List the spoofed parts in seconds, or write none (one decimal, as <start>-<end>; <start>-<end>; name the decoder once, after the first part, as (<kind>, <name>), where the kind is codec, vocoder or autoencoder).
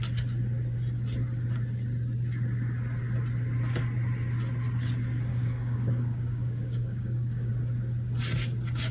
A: 5.3-7.5 (codec, DAC)